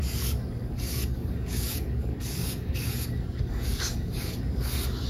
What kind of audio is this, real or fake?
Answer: fake